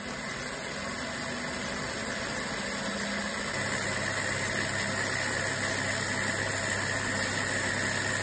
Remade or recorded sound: recorded